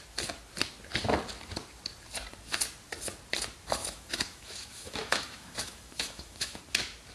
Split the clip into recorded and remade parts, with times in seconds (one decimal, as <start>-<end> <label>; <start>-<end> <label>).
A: 0.0-3.8 recorded; 3.8-6.6 remade; 6.6-7.1 recorded